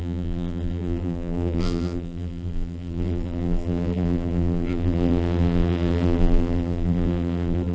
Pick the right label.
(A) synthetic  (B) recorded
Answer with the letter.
A